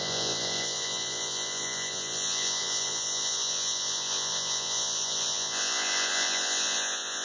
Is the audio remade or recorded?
remade